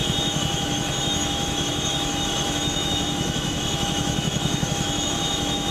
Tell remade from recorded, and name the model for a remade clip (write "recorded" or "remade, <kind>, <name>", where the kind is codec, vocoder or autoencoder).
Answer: remade, autoencoder, DAC-VAE